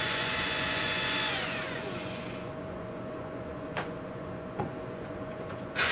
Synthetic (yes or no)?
yes